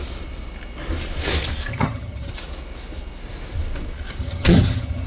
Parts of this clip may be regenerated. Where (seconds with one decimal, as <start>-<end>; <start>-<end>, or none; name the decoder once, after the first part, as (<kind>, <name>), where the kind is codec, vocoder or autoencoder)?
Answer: 1.7-2.3 (vocoder, HiFi-GAN); 4.2-5.1